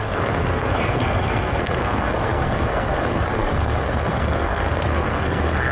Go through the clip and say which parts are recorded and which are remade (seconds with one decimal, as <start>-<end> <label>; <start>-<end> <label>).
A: 0.0-5.7 remade